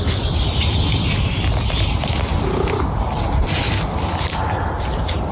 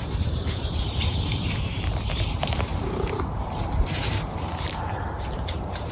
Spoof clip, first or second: second